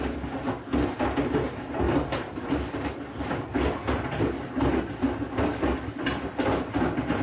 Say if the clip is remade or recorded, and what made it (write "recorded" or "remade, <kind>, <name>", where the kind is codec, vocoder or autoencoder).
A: recorded